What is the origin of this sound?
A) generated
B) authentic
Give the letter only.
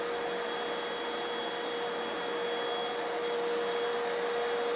B